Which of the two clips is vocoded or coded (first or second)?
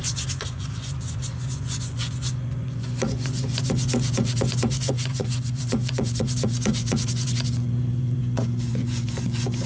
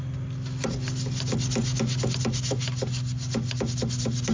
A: first